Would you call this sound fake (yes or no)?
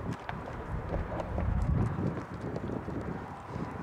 yes